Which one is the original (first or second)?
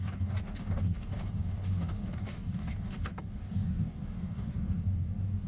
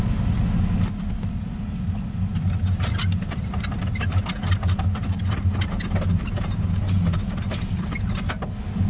second